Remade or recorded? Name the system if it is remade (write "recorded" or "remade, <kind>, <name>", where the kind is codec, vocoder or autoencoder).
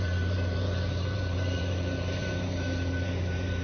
remade, vocoder, BigVGAN v2